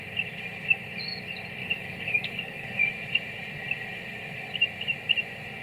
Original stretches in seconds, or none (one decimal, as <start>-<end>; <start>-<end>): 0.0-1.6; 2.8-5.6